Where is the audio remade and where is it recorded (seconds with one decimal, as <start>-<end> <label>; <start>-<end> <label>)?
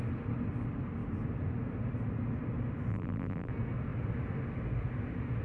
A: 0.0-2.9 recorded; 2.9-3.5 remade; 3.5-5.4 recorded